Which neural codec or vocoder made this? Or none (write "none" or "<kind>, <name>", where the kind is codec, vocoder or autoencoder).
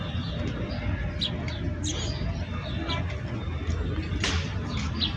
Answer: none